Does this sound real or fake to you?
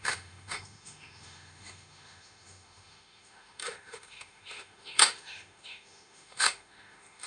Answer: fake